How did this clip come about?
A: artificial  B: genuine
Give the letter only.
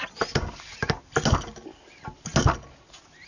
B